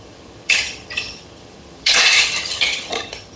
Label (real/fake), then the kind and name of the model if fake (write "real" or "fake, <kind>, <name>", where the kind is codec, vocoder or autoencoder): fake, vocoder, HiFi-GAN